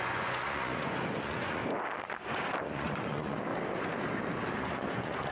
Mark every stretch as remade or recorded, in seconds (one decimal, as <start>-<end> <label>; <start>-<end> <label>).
0.0-1.6 remade; 1.6-2.6 recorded; 2.6-3.5 remade; 3.5-4.6 recorded; 4.6-5.3 remade